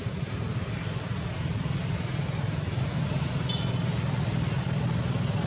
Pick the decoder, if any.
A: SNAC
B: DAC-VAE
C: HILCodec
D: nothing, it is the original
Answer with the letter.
D